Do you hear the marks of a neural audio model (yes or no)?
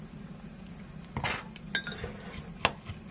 no